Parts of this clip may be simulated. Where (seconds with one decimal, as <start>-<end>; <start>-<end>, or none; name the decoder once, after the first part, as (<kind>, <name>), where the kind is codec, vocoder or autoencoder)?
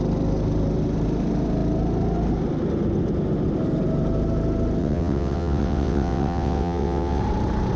4.8-7.2 (vocoder, WaveNeXt)